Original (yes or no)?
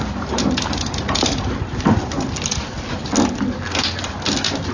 yes